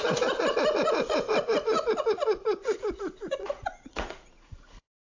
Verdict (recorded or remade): remade